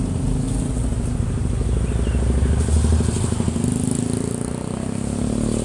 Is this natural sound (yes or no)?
yes